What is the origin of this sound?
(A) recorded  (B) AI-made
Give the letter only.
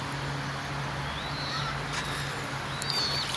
A